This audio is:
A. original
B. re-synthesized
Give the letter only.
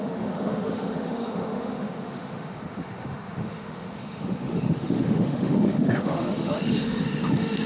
B